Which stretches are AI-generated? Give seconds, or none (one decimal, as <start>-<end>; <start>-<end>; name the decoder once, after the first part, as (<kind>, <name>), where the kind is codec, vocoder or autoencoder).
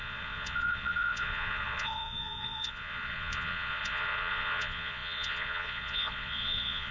0.0-6.9 (vocoder, Vocos)